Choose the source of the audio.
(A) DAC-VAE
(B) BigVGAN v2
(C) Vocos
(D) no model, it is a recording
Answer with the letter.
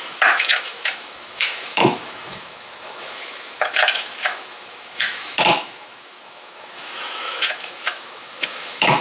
A